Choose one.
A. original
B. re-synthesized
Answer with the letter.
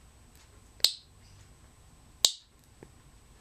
A